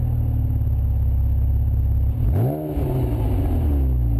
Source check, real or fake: real